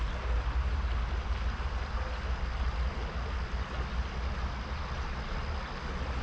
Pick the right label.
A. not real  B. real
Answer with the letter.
B